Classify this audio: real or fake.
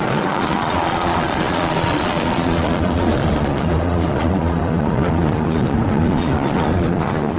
fake